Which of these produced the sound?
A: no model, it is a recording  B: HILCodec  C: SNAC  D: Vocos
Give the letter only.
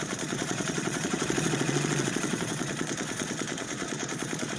D